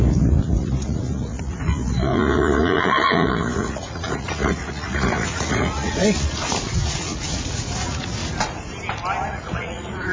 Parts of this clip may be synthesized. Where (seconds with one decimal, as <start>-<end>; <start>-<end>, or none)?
0.0-8.2; 9.3-10.1